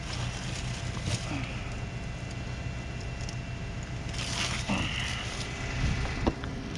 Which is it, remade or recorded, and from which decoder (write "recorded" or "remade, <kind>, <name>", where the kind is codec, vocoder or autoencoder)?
recorded